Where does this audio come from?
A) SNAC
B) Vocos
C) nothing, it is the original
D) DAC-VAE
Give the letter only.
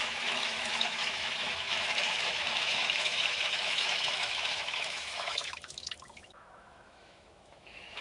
D